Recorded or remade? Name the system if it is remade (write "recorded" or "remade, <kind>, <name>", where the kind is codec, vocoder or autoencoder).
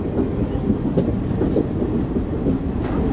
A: recorded